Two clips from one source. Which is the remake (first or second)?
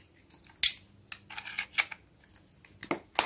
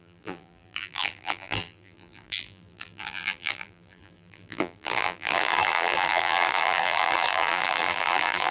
second